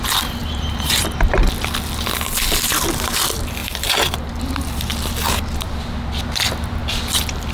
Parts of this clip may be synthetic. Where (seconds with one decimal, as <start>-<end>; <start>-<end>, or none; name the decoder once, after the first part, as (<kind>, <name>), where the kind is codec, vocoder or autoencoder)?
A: 0.4-1.0 (vocoder, BigVGAN v2); 3.6-4.2